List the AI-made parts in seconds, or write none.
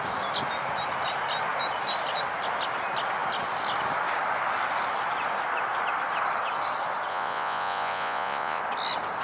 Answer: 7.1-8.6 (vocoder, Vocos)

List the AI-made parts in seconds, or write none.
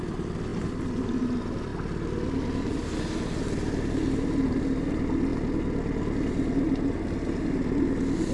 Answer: none